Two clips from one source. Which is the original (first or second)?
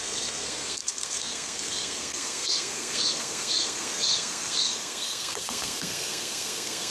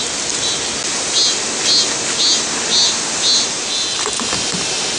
second